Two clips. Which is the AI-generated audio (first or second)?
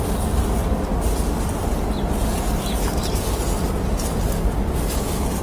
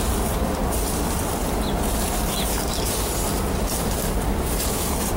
second